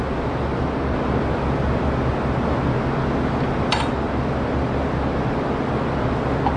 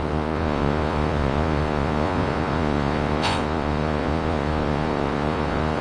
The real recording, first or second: first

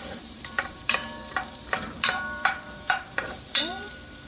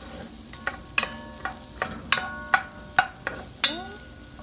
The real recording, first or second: second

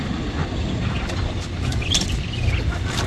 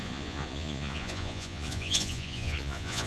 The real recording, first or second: first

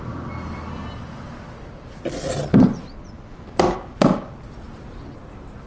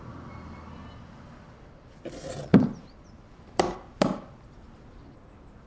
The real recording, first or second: first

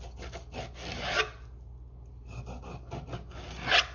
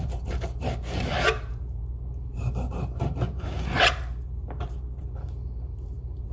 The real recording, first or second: first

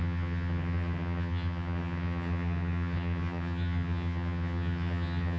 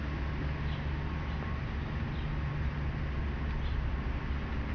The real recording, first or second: second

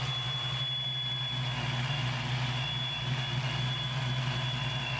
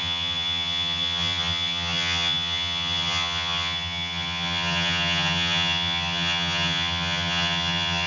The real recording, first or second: first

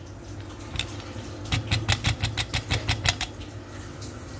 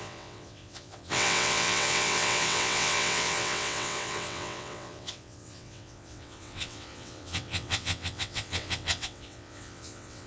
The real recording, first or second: first